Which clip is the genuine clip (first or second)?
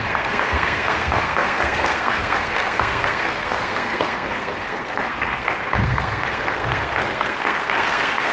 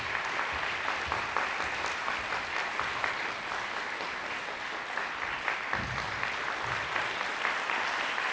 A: second